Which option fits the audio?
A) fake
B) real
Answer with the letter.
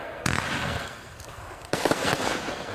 A